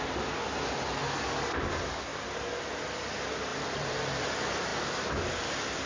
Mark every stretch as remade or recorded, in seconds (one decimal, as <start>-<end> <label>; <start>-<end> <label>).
0.0-3.5 recorded; 3.5-4.2 remade; 4.2-5.9 recorded